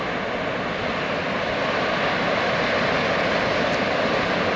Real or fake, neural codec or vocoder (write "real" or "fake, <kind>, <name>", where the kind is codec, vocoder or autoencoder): real